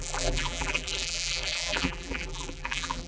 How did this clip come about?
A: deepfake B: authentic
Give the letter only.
A